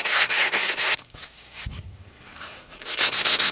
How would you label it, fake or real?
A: fake